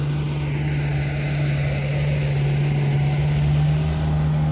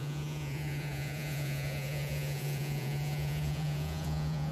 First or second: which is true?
first